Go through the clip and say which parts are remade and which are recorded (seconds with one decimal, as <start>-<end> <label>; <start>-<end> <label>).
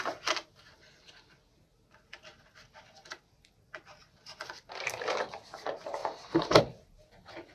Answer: 0.0-4.0 recorded; 4.0-4.8 remade; 4.8-6.0 recorded; 6.0-6.6 remade; 6.6-7.5 recorded